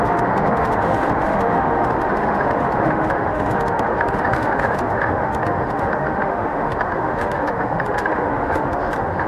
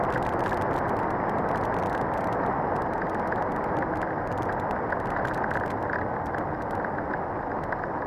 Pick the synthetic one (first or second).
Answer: first